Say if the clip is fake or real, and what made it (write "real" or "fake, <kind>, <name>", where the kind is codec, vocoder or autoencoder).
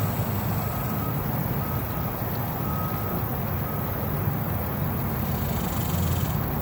real